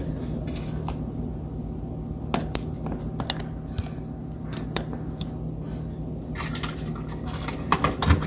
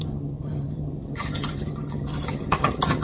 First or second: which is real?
first